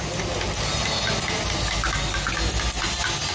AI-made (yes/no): no